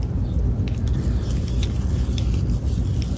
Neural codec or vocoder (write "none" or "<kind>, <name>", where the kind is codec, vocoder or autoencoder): none